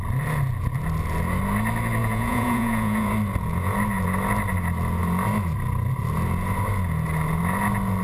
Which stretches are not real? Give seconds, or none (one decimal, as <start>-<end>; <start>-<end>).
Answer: 2.0-3.1